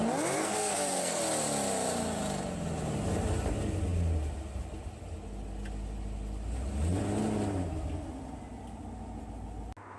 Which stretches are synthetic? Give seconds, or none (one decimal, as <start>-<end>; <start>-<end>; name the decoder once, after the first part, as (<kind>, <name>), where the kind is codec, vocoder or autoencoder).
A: 0.4-1.2 (codec, SNAC)